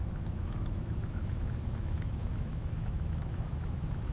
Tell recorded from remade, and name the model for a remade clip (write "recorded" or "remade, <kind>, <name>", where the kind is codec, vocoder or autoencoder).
remade, autoencoder, DAC-VAE